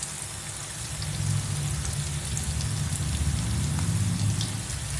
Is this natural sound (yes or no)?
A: yes